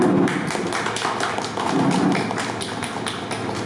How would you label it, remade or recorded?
recorded